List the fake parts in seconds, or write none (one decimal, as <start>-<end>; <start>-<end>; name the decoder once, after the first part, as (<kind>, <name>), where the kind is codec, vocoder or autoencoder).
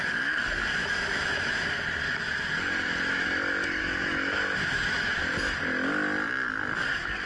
0.7-1.8 (autoencoder, DAC-VAE); 3.8-5.2